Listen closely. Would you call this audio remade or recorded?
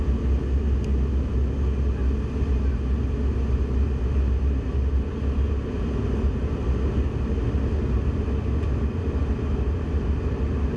recorded